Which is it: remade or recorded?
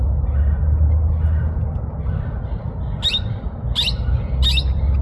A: recorded